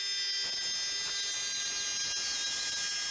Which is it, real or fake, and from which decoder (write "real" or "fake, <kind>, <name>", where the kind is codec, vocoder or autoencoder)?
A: real